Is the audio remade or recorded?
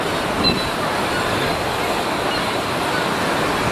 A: recorded